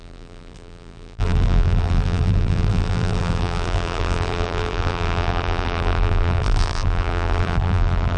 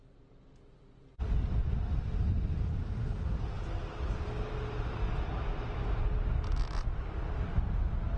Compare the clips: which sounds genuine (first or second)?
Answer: second